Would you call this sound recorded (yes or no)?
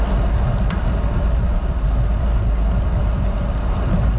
yes